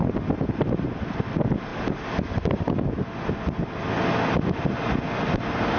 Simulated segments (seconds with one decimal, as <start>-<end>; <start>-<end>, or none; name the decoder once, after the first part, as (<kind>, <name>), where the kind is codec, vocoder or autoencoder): none